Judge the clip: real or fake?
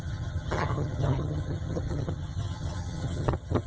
fake